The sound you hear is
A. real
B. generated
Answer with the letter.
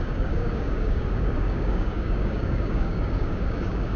B